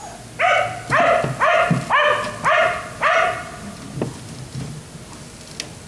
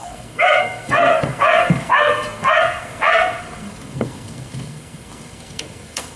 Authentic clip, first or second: first